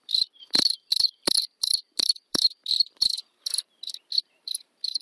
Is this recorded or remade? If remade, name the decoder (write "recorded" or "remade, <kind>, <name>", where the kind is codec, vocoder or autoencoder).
remade, vocoder, BigVGAN v2